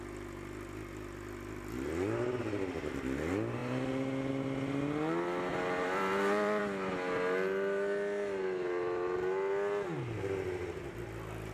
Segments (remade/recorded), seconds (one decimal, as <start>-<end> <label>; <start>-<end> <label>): 0.0-5.5 recorded; 5.5-6.6 remade; 6.6-11.5 recorded